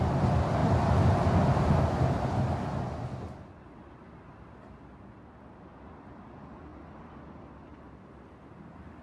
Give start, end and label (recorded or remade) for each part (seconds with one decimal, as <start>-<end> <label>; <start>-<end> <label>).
0.0-9.0 recorded